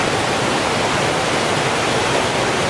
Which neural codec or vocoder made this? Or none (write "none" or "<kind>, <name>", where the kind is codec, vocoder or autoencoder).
none